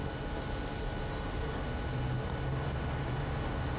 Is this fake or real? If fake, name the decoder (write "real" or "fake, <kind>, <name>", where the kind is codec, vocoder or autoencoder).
real